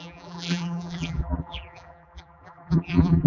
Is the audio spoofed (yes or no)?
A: yes